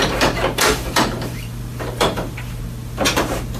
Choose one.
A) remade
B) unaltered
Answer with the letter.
A